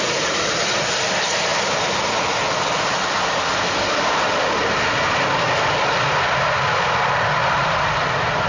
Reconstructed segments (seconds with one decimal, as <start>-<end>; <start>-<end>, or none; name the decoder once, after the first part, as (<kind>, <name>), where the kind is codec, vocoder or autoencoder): none